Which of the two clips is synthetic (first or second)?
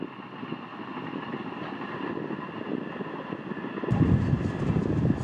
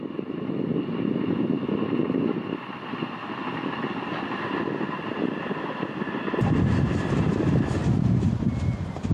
second